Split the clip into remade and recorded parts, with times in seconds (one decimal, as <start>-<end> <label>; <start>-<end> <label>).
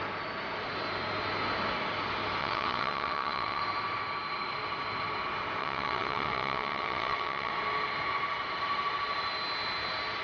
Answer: 0.0-2.4 recorded; 2.4-3.6 remade; 3.6-5.6 recorded; 5.6-7.5 remade; 7.5-10.2 recorded